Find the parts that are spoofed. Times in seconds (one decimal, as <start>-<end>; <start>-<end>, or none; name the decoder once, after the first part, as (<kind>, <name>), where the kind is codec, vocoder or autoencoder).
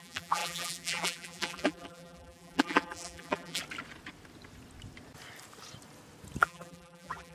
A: 0.0-3.6 (vocoder, BigVGAN v2); 6.4-7.3